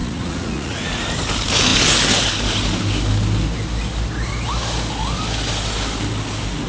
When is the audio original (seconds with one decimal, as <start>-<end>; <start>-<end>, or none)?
0.9-6.7